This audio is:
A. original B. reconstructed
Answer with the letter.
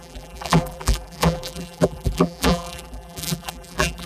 B